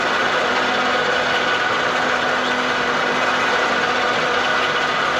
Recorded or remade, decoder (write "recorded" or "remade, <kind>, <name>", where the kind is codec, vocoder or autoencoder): recorded